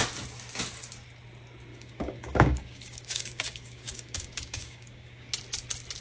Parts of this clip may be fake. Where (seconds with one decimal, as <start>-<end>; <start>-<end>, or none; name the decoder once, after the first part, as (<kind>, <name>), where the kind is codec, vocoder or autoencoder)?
1.7-5.3 (codec, DAC)